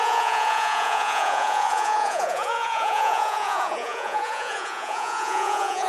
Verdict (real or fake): fake